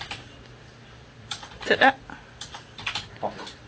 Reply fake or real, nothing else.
real